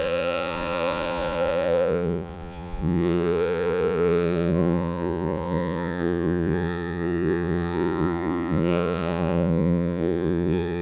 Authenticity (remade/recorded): remade